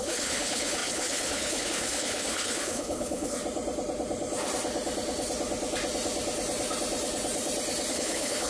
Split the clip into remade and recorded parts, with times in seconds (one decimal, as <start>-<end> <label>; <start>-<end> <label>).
0.0-3.4 remade; 3.4-7.9 recorded; 7.9-8.5 remade